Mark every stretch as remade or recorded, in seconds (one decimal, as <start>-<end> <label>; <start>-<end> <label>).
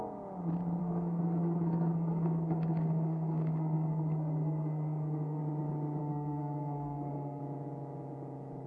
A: 0.0-0.8 recorded; 0.8-5.4 remade; 5.4-6.0 recorded; 6.0-7.4 remade; 7.4-8.7 recorded